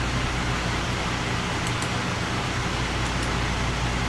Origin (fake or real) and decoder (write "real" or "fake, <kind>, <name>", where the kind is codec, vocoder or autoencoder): real